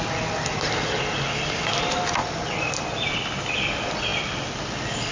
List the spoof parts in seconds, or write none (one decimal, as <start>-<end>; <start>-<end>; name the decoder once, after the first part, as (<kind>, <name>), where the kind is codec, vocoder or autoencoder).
none